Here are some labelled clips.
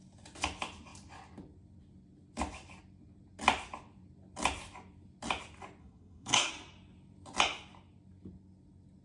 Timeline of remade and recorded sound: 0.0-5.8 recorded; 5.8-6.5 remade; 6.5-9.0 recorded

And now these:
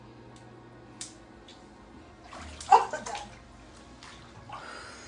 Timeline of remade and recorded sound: 0.0-5.1 recorded

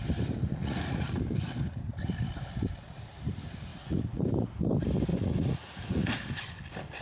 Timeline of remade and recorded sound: 0.0-0.6 recorded; 0.6-1.2 remade; 1.2-3.7 recorded; 3.7-4.5 remade; 4.5-5.1 recorded; 5.1-6.1 remade; 6.1-7.0 recorded